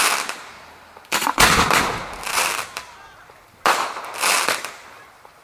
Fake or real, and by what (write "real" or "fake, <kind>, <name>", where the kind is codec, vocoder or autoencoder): real